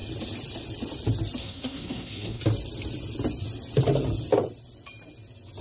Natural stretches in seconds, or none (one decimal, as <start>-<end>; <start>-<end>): 0.0-1.4; 2.4-5.6

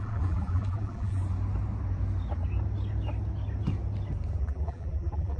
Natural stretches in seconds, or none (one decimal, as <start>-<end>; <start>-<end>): 1.2-4.4